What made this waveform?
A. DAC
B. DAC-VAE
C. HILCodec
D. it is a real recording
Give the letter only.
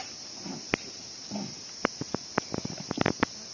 D